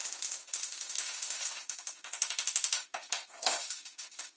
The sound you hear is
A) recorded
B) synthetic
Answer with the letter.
B